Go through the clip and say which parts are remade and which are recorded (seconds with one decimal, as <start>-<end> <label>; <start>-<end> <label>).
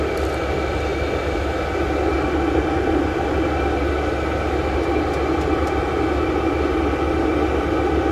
0.0-8.1 recorded